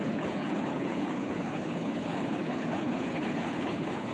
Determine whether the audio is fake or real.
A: fake